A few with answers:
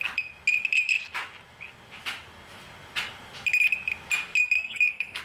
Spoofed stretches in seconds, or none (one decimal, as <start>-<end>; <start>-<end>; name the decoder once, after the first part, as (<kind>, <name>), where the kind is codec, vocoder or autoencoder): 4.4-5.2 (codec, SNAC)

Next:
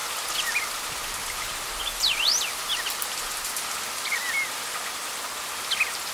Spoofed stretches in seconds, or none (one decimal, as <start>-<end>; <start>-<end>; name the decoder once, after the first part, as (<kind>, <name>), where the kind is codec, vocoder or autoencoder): none

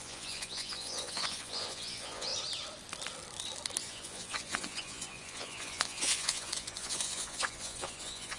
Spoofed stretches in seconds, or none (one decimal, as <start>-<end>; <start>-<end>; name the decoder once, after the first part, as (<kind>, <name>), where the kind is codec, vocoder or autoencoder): 0.0-2.3 (vocoder, Vocos); 3.8-8.4

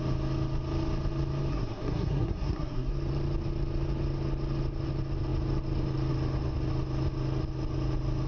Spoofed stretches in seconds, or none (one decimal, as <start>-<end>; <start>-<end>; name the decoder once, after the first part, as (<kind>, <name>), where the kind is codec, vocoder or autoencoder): 1.5-2.9 (codec, SNAC)

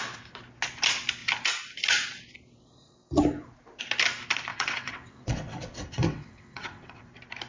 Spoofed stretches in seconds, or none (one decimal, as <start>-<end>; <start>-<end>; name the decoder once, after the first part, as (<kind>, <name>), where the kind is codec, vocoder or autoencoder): 4.5-7.0 (vocoder, WaveNeXt)

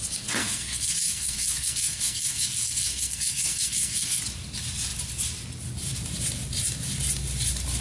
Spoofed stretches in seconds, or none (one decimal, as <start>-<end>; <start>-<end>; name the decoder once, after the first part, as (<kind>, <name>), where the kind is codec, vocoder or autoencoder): 0.4-4.2 (codec, SNAC)